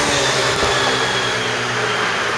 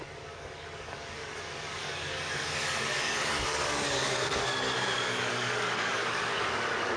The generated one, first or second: second